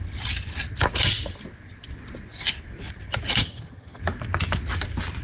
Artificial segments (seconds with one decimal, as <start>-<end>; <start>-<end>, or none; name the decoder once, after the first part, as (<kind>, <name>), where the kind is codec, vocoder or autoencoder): 3.4-4.0 (vocoder, HiFi-GAN)